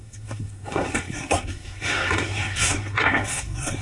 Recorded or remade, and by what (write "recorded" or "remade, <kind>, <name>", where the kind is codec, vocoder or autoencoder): remade, codec, SNAC